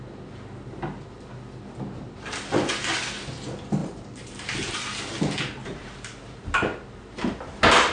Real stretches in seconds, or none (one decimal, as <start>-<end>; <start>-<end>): 0.0-3.8; 4.7-5.6; 7.0-7.9